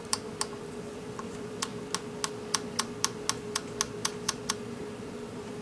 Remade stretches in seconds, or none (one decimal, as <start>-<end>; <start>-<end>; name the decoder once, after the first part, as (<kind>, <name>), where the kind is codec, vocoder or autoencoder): 0.0-1.7 (vocoder, BigVGAN v2); 5.1-5.6